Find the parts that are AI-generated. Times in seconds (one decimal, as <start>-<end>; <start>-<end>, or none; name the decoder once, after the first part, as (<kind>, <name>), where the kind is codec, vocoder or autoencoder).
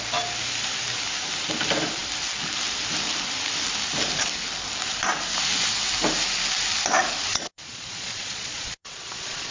7.3-9.5 (vocoder, Vocos)